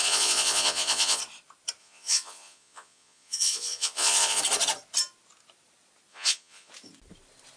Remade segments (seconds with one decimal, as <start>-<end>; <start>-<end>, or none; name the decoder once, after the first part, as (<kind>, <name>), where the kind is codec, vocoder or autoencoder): 0.0-1.2 (vocoder, Vocos); 1.8-4.4; 6.1-6.7